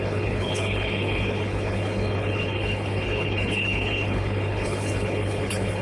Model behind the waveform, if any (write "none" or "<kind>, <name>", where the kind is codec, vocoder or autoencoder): codec, HILCodec